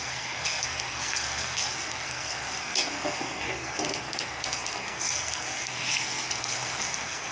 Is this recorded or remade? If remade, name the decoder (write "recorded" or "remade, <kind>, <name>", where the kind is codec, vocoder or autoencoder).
remade, codec, SNAC